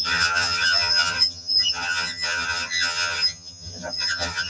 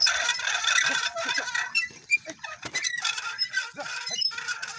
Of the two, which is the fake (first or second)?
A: first